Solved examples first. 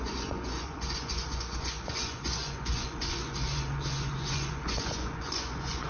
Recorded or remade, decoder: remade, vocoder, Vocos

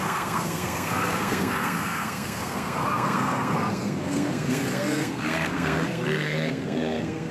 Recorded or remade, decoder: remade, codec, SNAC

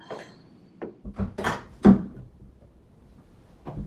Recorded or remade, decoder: remade, vocoder, BigVGAN v2